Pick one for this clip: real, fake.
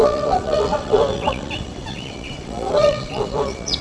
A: fake